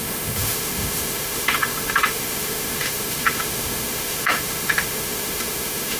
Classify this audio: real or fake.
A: fake